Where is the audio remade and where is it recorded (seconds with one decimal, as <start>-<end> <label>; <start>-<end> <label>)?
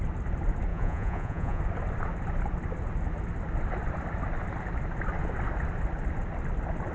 0.0-0.7 recorded; 0.7-1.6 remade; 1.6-6.9 recorded